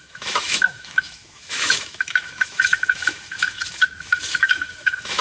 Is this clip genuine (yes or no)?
no